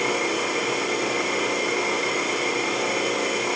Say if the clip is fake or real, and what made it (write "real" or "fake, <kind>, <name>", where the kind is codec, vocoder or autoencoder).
real